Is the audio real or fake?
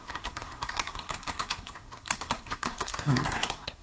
fake